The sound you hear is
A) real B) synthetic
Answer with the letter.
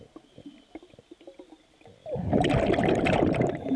A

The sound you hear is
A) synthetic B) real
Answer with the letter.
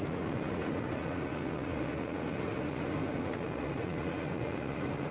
A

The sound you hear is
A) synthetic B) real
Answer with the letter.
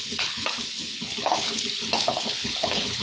A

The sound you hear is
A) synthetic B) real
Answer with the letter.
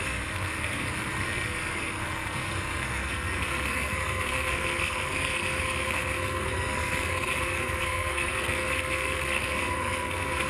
A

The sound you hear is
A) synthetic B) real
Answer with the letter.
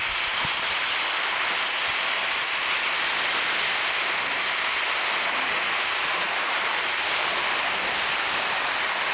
B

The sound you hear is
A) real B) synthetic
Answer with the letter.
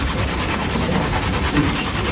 B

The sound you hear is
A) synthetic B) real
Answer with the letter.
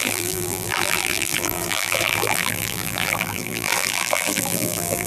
A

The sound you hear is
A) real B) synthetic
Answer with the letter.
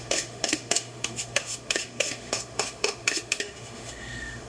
B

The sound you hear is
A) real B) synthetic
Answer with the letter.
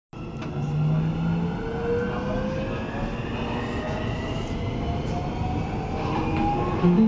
A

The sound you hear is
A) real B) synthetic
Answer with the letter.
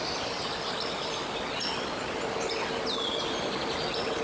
A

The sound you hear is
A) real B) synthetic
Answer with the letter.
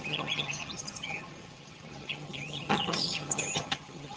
B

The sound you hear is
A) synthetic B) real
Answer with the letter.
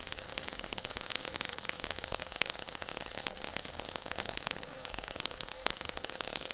A